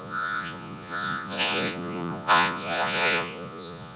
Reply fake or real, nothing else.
fake